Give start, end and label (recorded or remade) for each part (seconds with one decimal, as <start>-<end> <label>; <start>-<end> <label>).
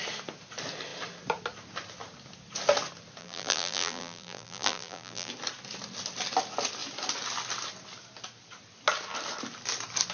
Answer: 0.0-3.2 recorded; 3.2-5.3 remade; 5.3-10.1 recorded